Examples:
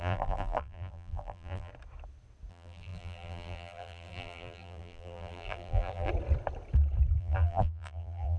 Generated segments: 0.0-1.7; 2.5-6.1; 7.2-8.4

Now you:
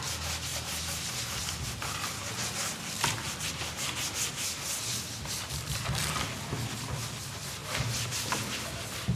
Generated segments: 0.5-1.1

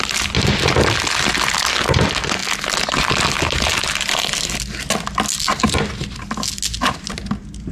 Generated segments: none